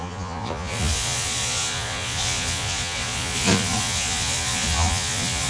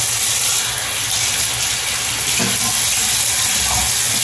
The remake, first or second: first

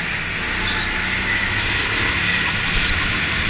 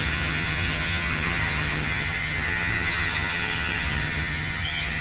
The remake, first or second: second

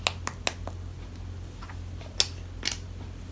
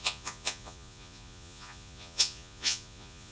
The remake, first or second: second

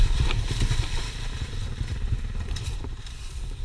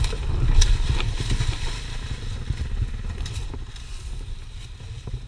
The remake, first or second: first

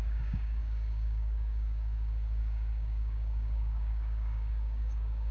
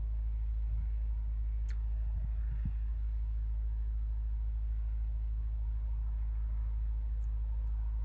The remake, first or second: first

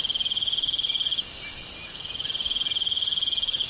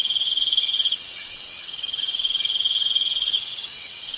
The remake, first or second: second